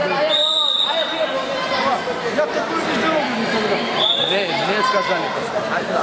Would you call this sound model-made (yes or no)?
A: no